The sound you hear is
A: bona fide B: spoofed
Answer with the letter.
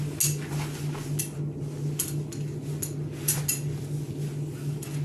A